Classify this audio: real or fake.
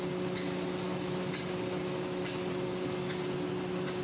real